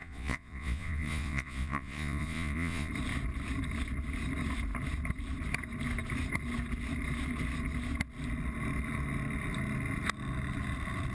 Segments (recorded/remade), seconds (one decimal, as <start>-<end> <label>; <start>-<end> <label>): 0.0-2.9 remade; 2.9-11.1 recorded